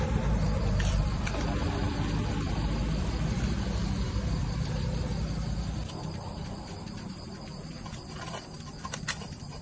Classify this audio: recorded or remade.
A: remade